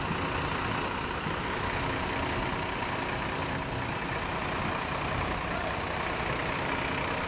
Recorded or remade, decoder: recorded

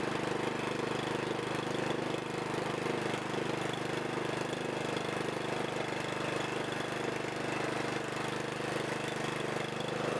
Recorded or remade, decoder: recorded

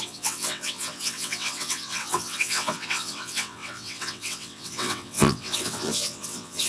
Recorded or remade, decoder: remade, vocoder, WaveNeXt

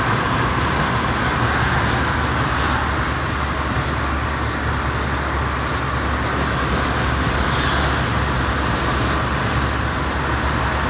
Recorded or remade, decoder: recorded